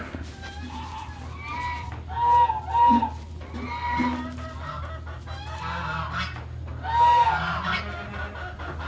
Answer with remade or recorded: recorded